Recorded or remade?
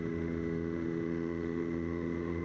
remade